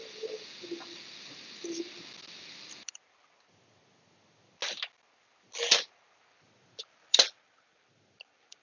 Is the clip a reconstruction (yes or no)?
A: no